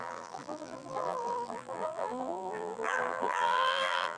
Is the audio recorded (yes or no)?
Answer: no